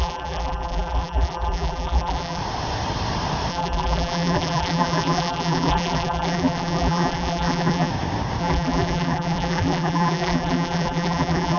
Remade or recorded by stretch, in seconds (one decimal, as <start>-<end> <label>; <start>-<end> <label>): 0.0-2.4 remade; 2.4-3.5 recorded; 3.5-7.9 remade; 7.9-8.4 recorded; 8.4-11.6 remade